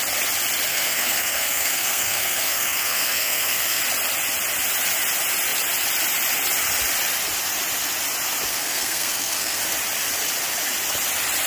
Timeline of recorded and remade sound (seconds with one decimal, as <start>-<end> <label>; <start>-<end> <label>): 0.0-0.7 recorded; 0.7-3.8 remade; 3.8-8.5 recorded; 8.5-9.6 remade; 9.6-11.5 recorded